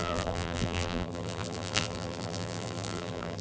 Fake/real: fake